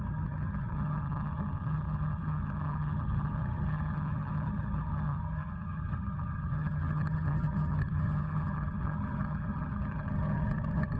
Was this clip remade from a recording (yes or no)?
yes